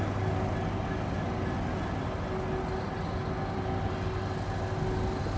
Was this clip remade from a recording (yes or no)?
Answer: no